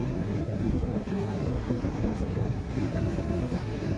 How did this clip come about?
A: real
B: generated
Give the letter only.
B